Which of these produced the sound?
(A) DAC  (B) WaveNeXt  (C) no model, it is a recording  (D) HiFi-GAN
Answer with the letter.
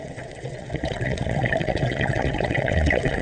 B